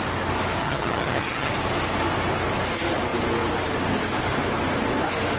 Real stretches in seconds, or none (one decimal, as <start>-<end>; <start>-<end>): 0.0-0.6; 1.5-5.4